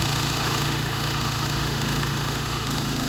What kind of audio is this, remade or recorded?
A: remade